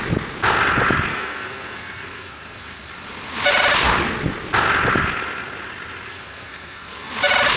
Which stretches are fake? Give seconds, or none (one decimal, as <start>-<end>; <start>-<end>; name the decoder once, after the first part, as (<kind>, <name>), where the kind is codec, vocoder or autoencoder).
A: 1.1-2.9 (codec, SNAC); 6.1-7.1